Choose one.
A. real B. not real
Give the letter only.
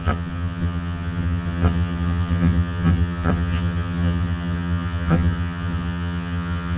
B